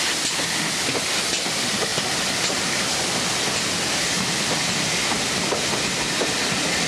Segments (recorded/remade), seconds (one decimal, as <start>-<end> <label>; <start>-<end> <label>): 0.0-6.9 recorded